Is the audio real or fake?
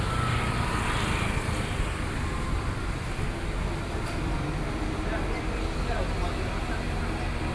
real